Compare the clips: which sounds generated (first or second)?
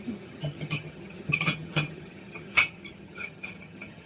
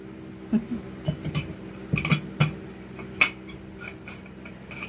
first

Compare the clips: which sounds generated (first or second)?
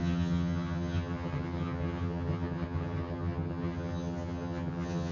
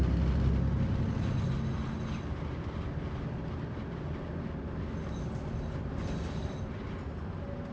first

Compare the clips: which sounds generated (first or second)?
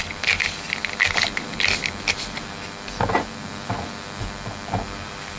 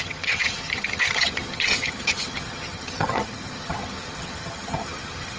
second